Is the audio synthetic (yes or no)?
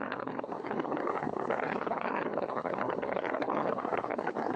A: yes